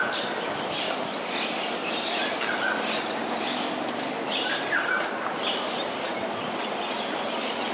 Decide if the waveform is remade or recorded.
recorded